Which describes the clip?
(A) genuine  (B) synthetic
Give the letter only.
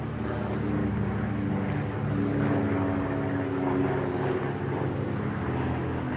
A